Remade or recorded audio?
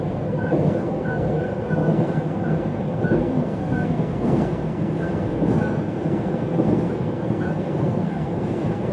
remade